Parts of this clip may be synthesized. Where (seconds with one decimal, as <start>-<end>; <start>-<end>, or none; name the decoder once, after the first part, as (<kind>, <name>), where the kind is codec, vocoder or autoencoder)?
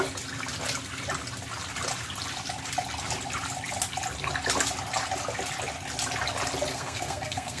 6.7-7.6 (codec, SNAC)